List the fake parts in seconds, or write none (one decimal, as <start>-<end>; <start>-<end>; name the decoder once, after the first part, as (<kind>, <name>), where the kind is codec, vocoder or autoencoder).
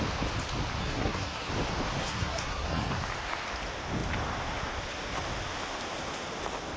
0.8-1.5 (codec, SNAC); 2.0-2.9